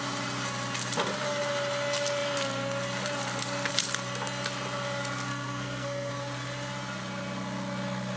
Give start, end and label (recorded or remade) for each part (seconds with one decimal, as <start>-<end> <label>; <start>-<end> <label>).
0.0-5.3 recorded; 5.3-6.1 remade; 6.1-8.2 recorded